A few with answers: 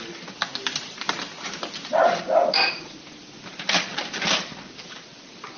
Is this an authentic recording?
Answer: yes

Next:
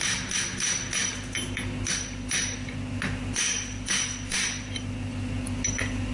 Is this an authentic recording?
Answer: yes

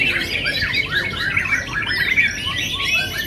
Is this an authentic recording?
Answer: yes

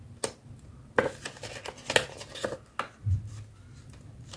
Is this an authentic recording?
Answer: yes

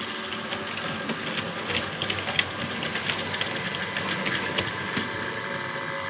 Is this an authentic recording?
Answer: yes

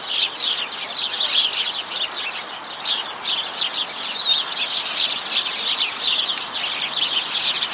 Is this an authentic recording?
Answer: yes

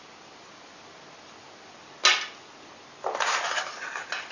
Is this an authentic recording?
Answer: yes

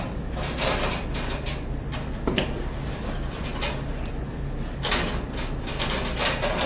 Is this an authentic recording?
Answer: yes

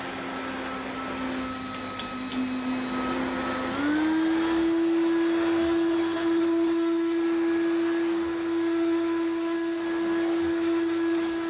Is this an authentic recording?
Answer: yes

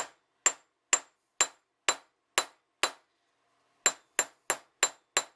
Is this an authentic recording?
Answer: yes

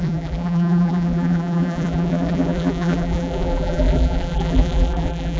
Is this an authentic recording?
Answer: no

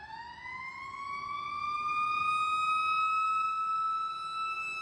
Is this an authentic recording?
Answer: yes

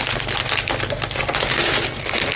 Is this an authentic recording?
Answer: yes